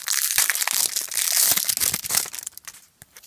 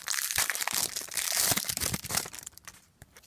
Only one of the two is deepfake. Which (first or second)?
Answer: second